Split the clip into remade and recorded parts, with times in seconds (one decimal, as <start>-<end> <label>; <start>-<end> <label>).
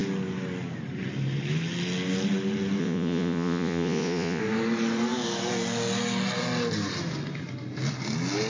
0.0-2.8 recorded; 2.8-4.4 remade; 4.4-8.5 recorded